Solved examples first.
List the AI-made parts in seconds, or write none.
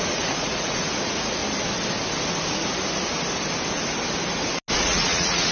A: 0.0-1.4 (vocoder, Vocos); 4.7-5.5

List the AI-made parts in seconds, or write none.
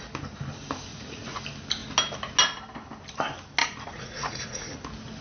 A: 0.9-1.4 (vocoder, Vocos); 3.6-4.8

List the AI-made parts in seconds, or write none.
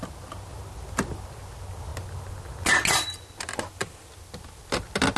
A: none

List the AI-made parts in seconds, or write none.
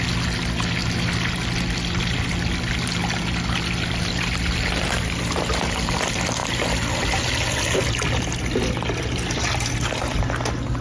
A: none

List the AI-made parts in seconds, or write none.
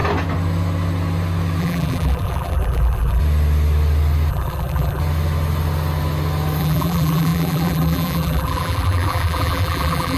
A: 1.6-3.2 (vocoder, BigVGAN v2); 4.3-5.0; 6.6-10.2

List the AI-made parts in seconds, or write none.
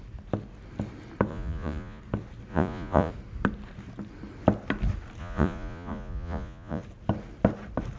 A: 1.3-2.0 (vocoder, Vocos); 2.5-3.1; 5.2-6.8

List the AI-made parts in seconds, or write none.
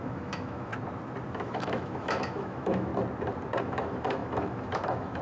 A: 0.0-0.7 (autoencoder, DAC-VAE); 1.3-2.9; 3.6-5.2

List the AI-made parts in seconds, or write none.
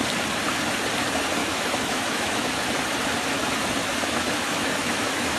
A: 1.4-2.5 (autoencoder, DAC-VAE); 3.8-5.4